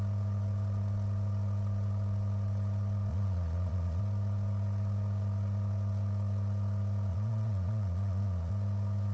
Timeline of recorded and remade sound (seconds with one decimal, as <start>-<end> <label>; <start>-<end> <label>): 0.0-3.1 recorded; 3.1-4.0 remade; 4.0-7.1 recorded; 7.1-8.5 remade; 8.5-9.1 recorded